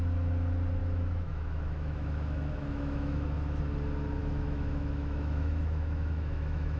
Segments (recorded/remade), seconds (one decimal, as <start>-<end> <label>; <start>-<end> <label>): 0.0-0.8 recorded; 0.8-3.6 remade; 3.6-4.2 recorded; 4.2-6.8 remade